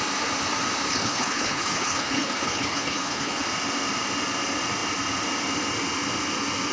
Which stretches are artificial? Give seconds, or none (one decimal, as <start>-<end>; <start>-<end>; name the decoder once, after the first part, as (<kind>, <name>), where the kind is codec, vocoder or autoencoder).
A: 0.9-3.4 (codec, HILCodec)